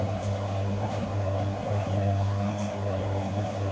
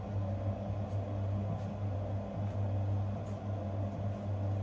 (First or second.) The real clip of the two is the second